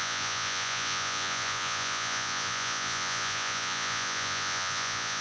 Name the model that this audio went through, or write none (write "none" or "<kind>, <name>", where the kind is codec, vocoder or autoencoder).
vocoder, Vocos